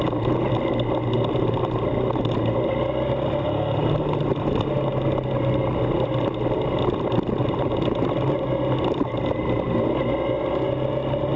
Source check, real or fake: real